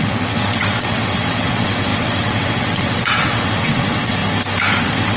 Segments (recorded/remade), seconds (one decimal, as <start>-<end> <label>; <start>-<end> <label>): 0.0-4.2 remade; 4.2-4.8 recorded; 4.8-5.2 remade